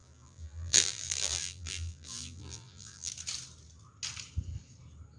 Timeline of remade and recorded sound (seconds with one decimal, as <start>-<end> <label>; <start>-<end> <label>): 0.0-3.1 remade; 3.1-5.2 recorded